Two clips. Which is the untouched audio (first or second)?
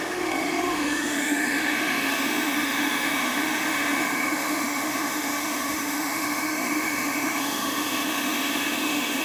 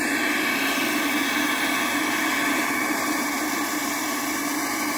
second